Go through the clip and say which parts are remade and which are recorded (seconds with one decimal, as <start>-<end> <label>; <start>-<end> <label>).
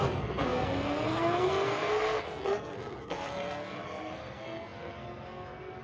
0.0-5.8 remade